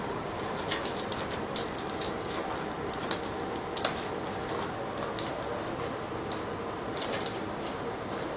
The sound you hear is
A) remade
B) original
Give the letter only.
B